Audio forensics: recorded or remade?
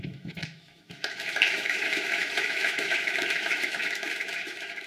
remade